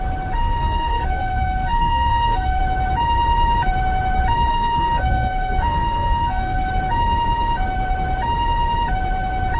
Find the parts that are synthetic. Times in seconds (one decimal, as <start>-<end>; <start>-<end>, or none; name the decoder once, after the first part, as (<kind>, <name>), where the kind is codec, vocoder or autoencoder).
0.4-2.6 (codec, SNAC); 4.5-6.7